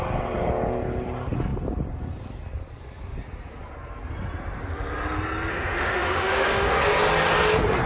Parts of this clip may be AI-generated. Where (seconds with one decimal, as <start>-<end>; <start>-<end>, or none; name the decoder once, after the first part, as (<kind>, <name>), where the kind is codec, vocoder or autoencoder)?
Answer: 5.5-6.8 (autoencoder, DAC-VAE)